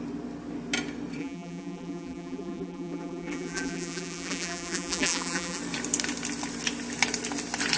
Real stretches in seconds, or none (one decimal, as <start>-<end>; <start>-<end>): 0.0-1.2; 5.6-7.8